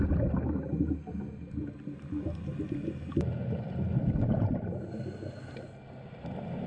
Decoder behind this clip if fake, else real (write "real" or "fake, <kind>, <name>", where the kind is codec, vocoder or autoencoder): real